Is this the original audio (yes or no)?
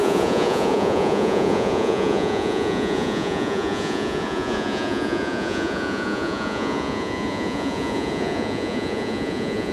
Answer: no